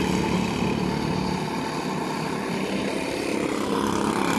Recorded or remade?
recorded